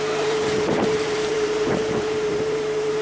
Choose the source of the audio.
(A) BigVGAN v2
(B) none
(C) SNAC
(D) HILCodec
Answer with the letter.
A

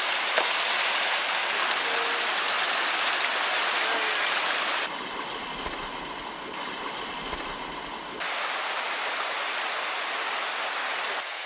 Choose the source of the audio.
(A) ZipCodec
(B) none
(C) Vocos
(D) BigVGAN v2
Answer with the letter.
B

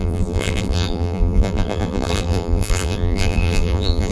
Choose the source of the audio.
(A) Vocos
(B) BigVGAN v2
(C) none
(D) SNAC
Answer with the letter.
B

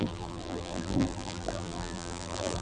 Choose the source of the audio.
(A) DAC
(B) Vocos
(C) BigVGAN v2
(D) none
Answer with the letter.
C